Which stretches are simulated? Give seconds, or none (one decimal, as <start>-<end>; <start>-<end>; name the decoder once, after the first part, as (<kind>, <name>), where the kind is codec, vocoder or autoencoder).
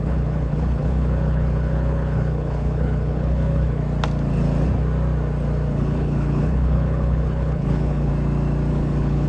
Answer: 0.0-3.8 (codec, HILCodec); 5.7-8.1; 8.7-9.3